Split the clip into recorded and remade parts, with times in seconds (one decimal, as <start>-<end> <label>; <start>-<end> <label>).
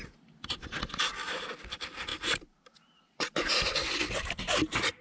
0.0-5.0 recorded